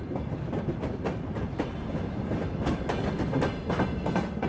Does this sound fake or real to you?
real